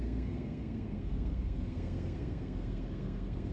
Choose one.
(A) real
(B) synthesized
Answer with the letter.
B